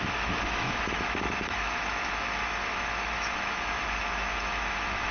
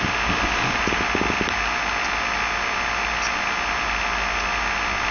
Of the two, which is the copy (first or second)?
first